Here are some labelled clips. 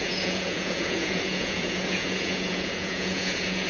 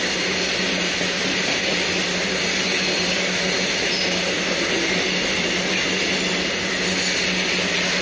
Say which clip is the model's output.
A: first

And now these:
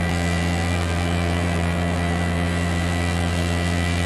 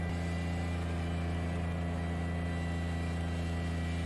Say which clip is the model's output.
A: first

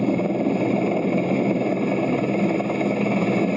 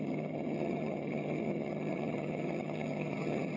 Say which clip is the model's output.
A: second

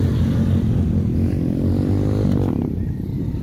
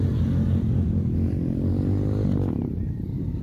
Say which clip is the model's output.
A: first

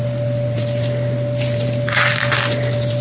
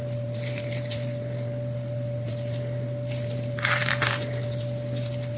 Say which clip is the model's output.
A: second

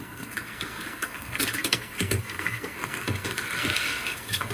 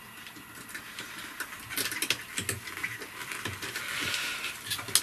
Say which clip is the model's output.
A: first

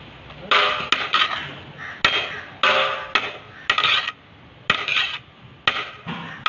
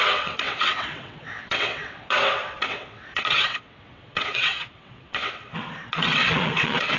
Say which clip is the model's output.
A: second